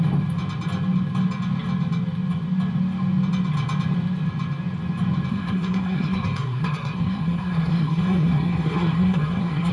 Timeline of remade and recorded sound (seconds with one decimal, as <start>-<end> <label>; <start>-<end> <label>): 0.0-5.3 recorded; 5.3-9.7 remade